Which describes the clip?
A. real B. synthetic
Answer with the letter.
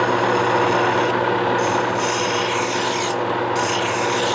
A